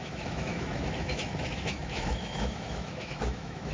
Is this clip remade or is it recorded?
remade